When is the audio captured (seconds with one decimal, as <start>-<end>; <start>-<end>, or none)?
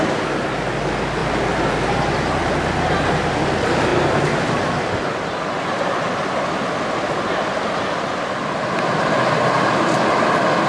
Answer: 0.0-1.2; 1.7-10.7